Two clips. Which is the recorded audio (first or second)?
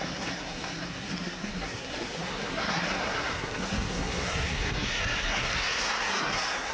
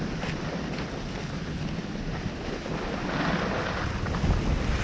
second